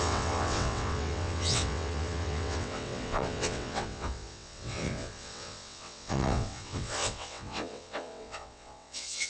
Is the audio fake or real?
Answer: fake